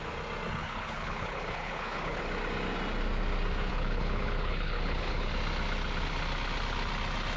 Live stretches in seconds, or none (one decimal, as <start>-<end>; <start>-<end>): 0.0-0.6; 2.2-3.7; 5.3-7.4